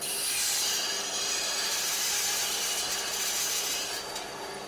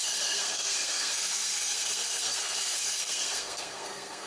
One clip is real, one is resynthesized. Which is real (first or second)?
first